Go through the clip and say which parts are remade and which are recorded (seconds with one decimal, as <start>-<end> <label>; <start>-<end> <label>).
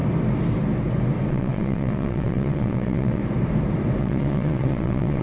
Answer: 0.0-1.3 recorded; 1.3-3.2 remade; 3.2-4.0 recorded; 4.0-5.2 remade